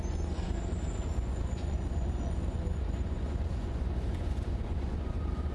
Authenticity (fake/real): fake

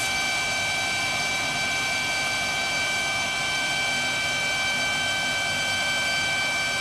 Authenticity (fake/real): real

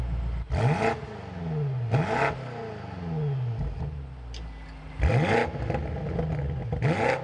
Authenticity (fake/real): real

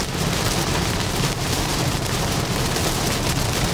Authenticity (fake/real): fake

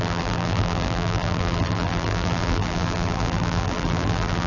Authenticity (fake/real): fake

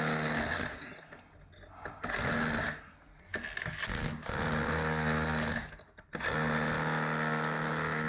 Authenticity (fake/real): real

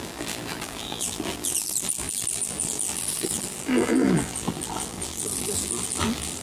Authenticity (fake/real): fake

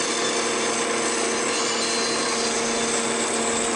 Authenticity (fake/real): real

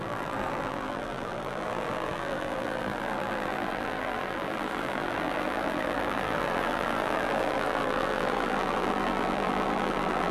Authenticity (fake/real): fake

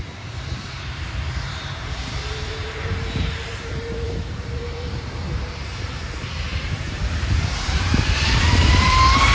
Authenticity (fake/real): fake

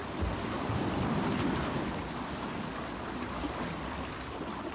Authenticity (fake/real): real